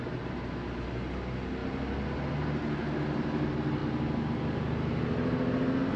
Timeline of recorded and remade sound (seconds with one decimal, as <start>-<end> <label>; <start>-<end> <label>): 0.0-6.0 recorded